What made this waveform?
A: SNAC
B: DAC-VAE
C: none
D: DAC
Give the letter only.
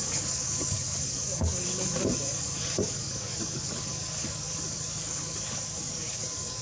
D